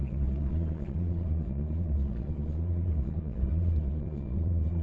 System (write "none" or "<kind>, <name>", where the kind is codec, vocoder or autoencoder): vocoder, Vocos